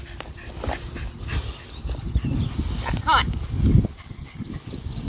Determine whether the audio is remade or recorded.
recorded